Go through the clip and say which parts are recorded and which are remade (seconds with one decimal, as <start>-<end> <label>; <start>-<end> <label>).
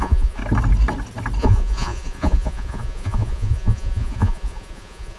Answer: 0.0-0.4 remade; 0.4-1.4 recorded; 1.4-5.2 remade